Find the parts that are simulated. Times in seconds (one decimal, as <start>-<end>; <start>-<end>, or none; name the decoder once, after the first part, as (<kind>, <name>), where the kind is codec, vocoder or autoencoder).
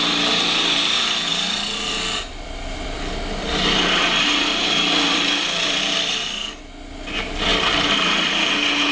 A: 1.3-5.8 (vocoder, BigVGAN v2); 7.5-8.5